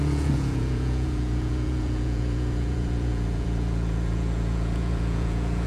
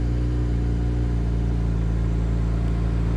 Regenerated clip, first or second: first